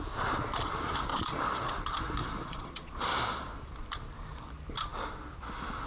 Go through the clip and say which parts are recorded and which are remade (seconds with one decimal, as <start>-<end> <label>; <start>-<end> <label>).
0.0-1.1 recorded; 1.1-1.7 remade; 1.7-2.2 recorded; 2.2-3.5 remade; 3.5-5.9 recorded